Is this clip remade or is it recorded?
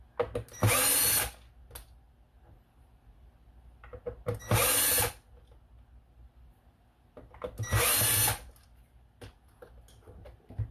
recorded